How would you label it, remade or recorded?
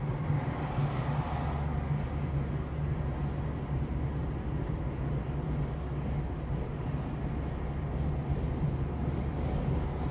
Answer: recorded